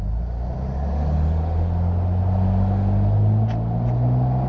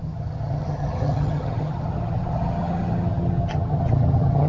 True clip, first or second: first